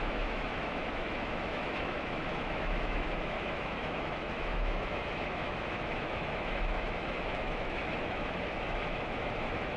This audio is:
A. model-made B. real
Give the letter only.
A